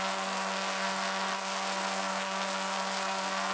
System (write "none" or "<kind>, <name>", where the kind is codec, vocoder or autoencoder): codec, SNAC